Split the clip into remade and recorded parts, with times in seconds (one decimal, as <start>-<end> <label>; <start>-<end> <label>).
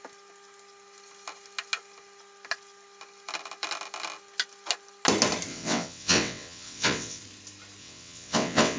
0.0-5.5 recorded; 5.5-7.2 remade; 7.2-7.8 recorded; 7.8-8.8 remade